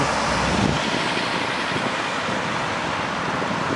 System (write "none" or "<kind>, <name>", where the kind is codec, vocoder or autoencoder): none